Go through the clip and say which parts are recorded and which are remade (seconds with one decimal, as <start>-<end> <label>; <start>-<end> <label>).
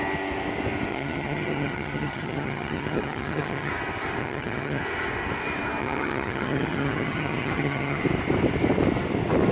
0.0-0.9 recorded; 0.9-3.7 remade; 3.7-4.2 recorded; 4.2-4.8 remade; 4.8-5.8 recorded; 5.8-8.0 remade; 8.0-9.5 recorded